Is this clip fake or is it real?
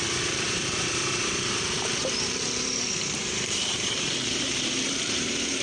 fake